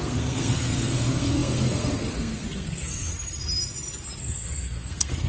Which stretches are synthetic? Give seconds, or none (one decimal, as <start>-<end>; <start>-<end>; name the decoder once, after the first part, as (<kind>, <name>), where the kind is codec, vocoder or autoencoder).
0.0-3.1 (codec, SNAC); 4.2-5.3